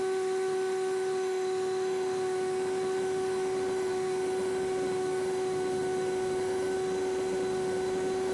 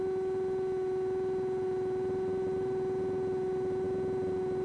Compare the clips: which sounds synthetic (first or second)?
first